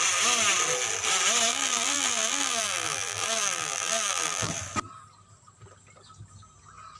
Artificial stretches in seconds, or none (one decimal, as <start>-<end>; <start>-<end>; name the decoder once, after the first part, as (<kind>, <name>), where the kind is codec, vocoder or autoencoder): 1.5-4.5 (vocoder, BigVGAN v2)